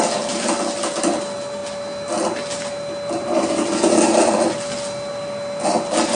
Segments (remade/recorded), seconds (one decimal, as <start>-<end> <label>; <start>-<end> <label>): 0.0-6.1 recorded